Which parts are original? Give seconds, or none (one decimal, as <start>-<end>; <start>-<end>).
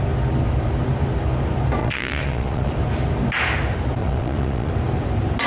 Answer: 0.0-1.8; 2.7-4.0; 4.7-5.5